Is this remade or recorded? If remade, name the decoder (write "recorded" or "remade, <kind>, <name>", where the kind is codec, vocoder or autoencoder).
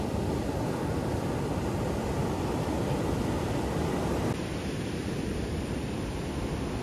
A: recorded